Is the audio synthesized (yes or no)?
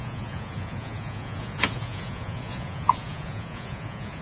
yes